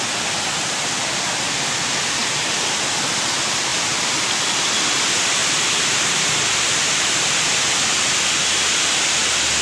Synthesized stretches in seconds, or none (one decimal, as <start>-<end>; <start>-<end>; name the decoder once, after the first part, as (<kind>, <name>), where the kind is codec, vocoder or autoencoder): 2.2-2.9 (vocoder, BigVGAN v2); 3.7-4.3; 5.4-7.6